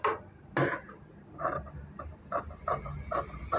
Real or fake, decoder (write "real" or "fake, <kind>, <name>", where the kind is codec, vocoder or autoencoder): real